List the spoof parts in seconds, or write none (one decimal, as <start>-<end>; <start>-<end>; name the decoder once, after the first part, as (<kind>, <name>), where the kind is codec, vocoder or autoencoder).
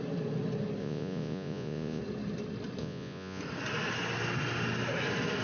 0.8-2.0 (vocoder, Vocos); 2.8-3.4